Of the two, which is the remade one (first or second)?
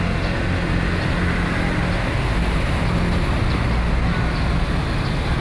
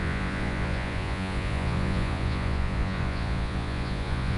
second